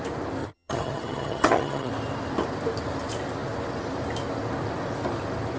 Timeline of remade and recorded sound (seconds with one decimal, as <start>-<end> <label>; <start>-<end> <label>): 0.0-0.4 recorded; 0.4-1.9 remade; 1.9-5.6 recorded